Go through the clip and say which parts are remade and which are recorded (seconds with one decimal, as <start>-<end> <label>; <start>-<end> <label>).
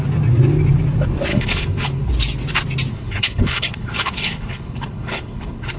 0.0-1.3 recorded; 1.3-2.1 remade; 2.1-2.9 recorded; 2.9-5.8 remade